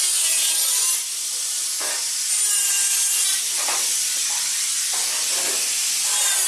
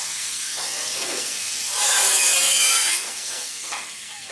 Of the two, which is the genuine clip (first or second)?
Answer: first